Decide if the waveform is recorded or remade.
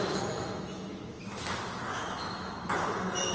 remade